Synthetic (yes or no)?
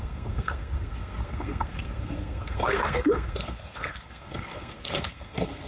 yes